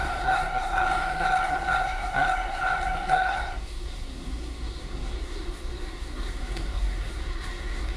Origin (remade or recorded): remade